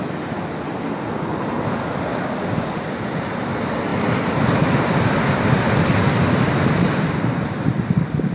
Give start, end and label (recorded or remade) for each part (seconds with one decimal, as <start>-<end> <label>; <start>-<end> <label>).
0.0-2.1 recorded; 2.1-2.8 remade; 2.8-8.3 recorded